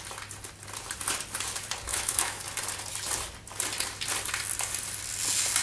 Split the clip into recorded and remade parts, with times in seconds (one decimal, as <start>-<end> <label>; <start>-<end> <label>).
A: 0.0-1.9 recorded; 1.9-2.4 remade; 2.4-5.6 recorded